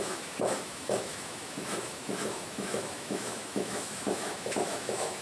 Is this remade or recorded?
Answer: remade